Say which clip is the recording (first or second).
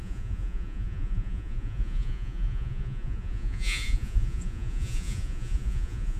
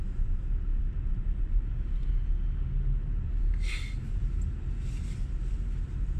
second